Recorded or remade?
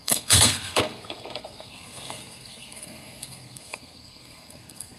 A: remade